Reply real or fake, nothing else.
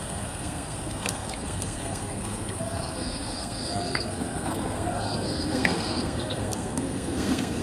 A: fake